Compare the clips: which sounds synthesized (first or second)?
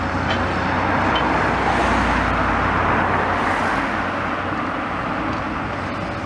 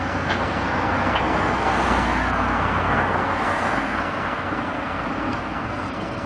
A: second